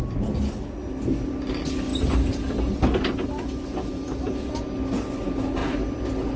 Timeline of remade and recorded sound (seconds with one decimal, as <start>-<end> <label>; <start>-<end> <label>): 0.0-1.9 recorded; 1.9-2.6 remade; 2.6-5.6 recorded; 5.6-6.4 remade